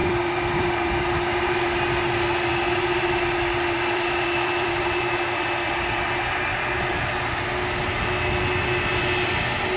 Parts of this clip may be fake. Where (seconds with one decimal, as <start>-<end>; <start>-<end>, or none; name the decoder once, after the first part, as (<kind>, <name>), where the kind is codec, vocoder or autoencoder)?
0.0-1.0 (vocoder, BigVGAN v2); 2.5-6.9